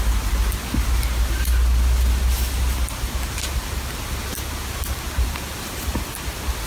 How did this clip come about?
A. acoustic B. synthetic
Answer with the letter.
A